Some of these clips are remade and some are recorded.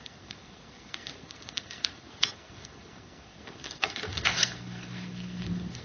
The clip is remade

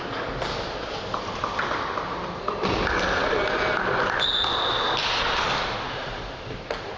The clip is recorded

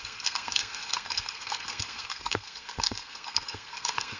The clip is remade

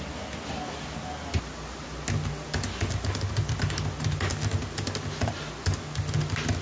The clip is recorded